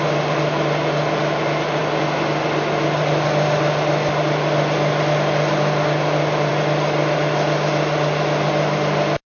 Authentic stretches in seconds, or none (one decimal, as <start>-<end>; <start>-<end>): 0.0-9.4